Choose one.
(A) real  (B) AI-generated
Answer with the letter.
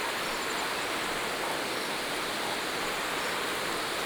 A